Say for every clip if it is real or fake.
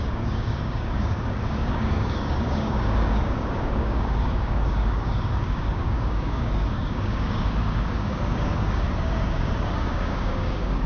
fake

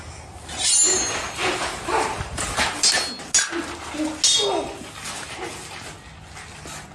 real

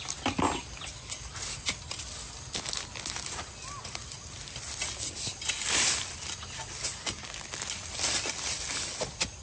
real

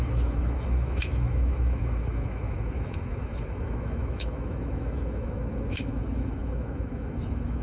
fake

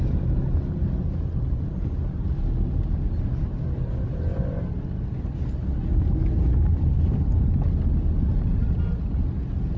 real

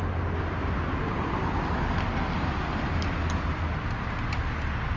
real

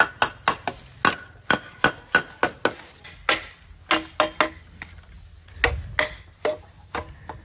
real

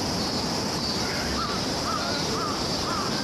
real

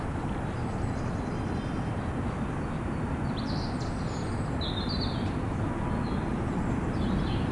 real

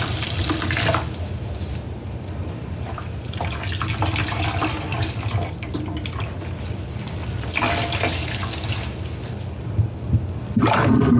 real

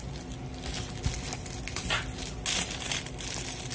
real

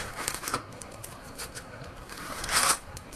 fake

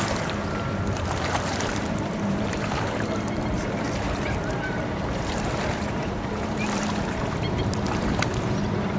fake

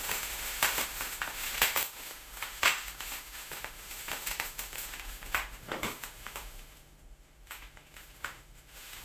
fake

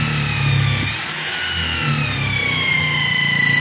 real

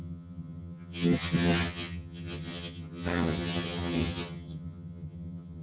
fake